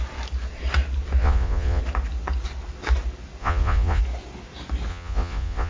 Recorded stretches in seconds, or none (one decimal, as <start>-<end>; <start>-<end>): 0.0-1.2; 1.8-3.4; 4.0-4.9